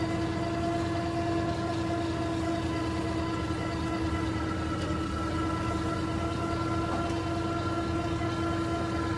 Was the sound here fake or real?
real